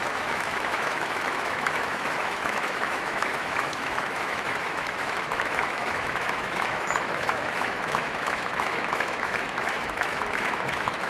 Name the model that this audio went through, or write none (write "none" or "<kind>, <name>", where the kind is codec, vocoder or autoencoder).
autoencoder, DAC-VAE